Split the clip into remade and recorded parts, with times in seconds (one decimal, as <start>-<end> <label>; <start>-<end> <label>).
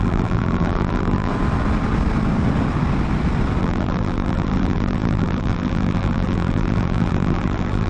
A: 0.0-1.3 remade; 1.3-3.6 recorded; 3.6-7.9 remade